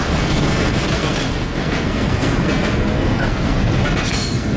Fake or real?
fake